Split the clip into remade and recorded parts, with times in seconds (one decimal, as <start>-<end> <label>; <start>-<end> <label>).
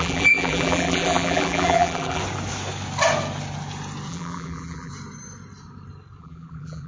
0.0-2.2 remade; 2.2-4.1 recorded; 4.1-4.9 remade; 4.9-6.2 recorded; 6.2-6.9 remade